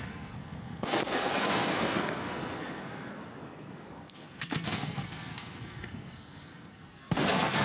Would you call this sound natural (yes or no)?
no